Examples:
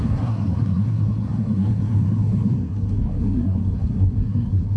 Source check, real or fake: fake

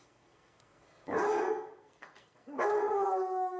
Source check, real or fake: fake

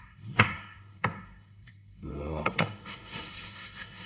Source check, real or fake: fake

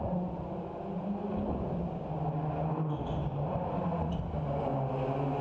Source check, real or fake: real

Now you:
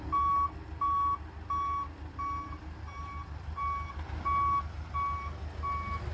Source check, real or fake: real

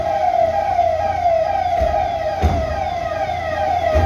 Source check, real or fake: real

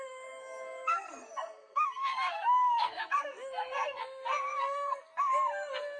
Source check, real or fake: fake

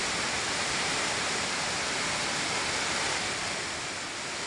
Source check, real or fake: real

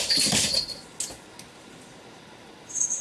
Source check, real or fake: real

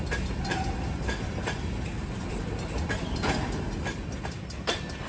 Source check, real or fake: real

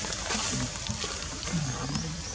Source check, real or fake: real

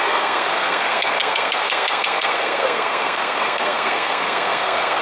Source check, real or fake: fake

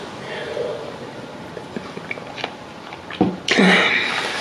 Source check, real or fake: real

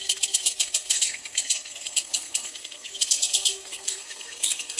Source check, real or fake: fake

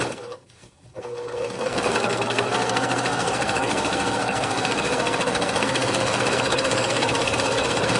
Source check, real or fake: fake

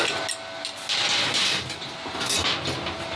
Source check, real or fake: real